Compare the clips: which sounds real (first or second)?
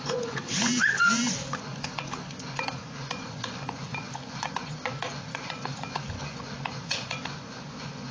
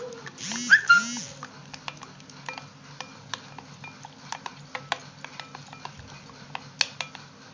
second